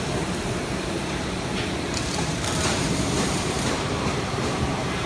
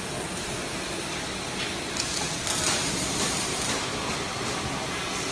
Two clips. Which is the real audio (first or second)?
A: second